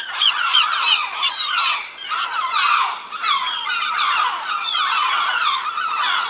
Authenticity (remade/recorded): remade